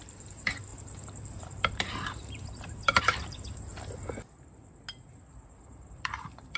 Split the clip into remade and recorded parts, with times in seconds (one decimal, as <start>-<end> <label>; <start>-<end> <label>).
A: 0.0-3.7 remade; 3.7-5.5 recorded; 5.5-6.6 remade